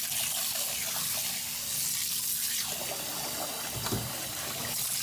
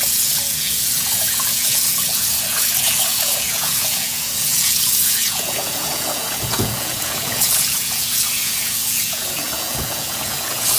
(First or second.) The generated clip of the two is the second